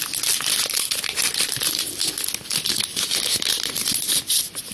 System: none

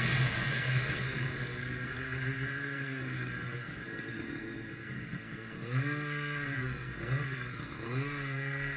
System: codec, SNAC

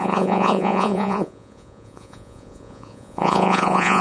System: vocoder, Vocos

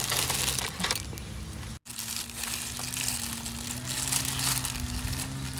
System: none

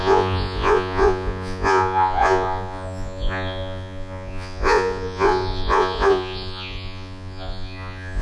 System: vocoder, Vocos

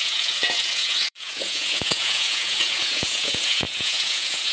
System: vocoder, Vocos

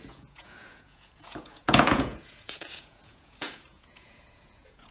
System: vocoder, Vocos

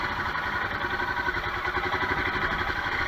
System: none